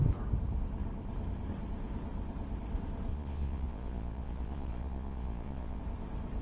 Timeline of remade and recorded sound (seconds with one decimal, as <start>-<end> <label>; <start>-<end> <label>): 0.0-3.1 recorded; 3.1-5.8 remade; 5.8-6.4 recorded